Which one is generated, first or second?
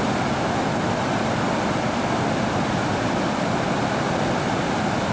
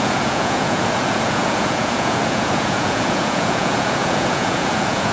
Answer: second